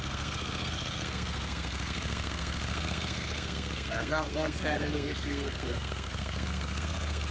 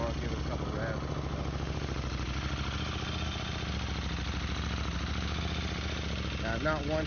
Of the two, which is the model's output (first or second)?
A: first